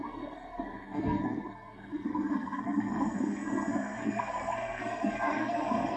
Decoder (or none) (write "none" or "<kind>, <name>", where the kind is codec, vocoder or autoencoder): codec, SNAC